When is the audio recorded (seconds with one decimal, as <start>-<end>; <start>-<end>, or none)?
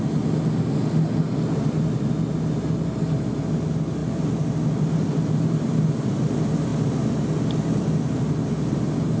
0.0-4.0; 6.3-9.2